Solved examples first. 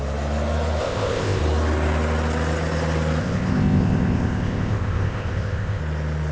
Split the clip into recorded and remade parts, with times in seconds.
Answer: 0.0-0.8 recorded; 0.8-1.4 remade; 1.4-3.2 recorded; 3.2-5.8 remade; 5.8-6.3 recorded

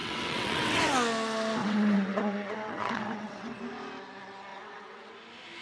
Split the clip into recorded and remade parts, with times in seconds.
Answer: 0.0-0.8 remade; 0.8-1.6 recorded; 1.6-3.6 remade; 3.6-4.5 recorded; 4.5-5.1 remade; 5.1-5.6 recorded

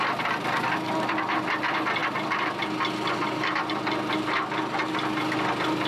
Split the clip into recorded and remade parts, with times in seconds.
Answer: 0.0-5.9 recorded

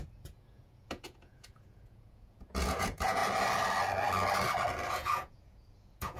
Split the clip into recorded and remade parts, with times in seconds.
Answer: 0.0-3.2 remade; 3.2-4.9 recorded; 4.9-6.2 remade